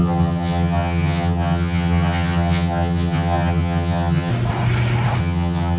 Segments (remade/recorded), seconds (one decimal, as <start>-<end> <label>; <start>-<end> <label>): 0.0-4.3 remade; 4.3-5.2 recorded; 5.2-5.8 remade